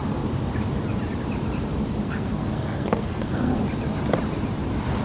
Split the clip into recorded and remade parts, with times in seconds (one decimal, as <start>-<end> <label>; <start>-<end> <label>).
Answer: 0.0-2.0 recorded; 2.0-3.6 remade; 3.6-5.0 recorded